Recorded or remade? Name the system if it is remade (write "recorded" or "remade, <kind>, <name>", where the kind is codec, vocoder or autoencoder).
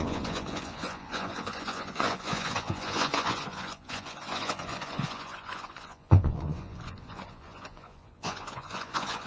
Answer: remade, vocoder, Vocos